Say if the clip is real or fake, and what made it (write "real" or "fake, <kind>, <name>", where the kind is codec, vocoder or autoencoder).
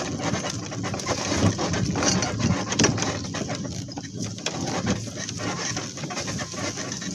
real